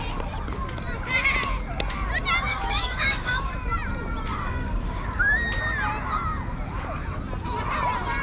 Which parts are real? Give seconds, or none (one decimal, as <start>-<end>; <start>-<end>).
0.0-2.5; 3.5-4.3; 5.2-8.2